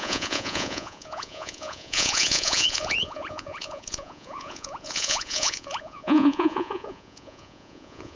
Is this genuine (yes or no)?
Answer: no